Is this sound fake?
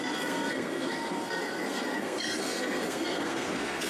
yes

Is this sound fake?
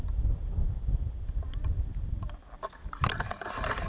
no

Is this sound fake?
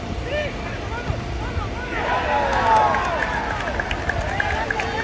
no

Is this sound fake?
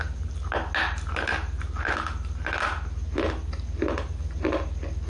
no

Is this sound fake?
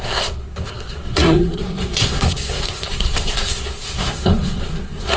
yes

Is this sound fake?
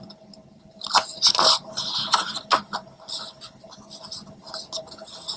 no